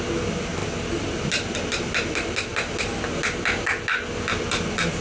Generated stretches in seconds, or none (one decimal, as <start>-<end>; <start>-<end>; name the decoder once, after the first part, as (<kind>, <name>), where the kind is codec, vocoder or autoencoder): none